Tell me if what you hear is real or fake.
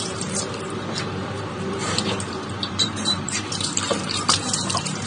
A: fake